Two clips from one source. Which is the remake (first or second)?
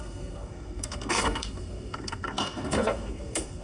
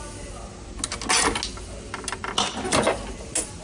first